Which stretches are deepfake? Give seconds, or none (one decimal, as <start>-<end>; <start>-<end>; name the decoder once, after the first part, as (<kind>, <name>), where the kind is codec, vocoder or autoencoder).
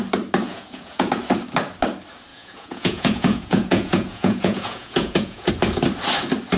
0.5-1.1 (vocoder, Vocos); 2.3-5.5